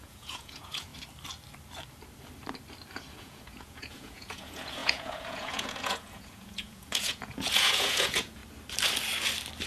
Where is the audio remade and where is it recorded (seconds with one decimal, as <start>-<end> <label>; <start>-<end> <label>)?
0.0-0.9 remade; 0.9-3.2 recorded; 3.2-8.4 remade; 8.4-9.7 recorded